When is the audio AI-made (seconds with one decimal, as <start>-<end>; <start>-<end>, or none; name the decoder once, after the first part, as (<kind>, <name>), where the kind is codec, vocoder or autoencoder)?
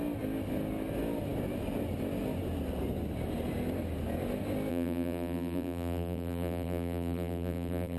4.7-8.0 (vocoder, BigVGAN v2)